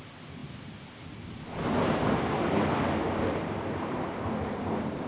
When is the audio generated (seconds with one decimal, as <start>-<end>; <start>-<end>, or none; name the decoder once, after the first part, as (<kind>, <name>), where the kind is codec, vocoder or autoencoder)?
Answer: 0.4-3.4 (vocoder, BigVGAN v2)